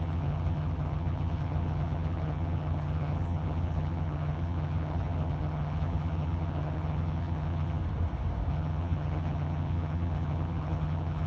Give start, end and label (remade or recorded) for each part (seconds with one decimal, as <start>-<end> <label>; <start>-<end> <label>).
0.0-7.8 remade; 7.8-8.5 recorded; 8.5-11.3 remade